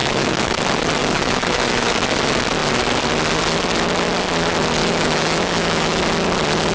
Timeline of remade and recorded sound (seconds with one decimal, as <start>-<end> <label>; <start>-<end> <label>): 0.0-0.6 remade; 0.6-1.0 recorded; 1.0-2.0 remade; 2.0-4.8 recorded; 4.8-6.0 remade; 6.0-6.7 recorded